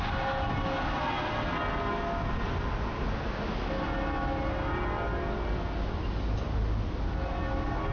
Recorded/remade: recorded